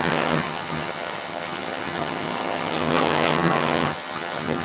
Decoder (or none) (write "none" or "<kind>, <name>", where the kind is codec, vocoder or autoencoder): vocoder, HiFi-GAN